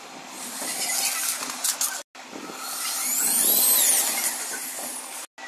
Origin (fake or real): real